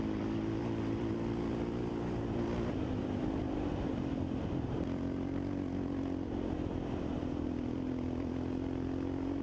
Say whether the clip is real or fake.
fake